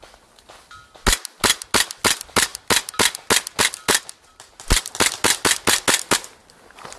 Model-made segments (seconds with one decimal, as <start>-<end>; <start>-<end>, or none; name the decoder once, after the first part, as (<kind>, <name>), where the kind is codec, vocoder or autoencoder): 4.3-4.8 (vocoder, BigVGAN v2)